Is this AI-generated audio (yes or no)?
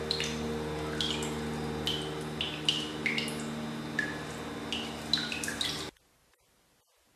no